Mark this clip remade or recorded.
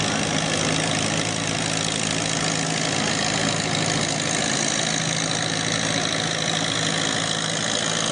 recorded